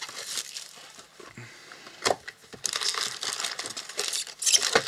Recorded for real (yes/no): yes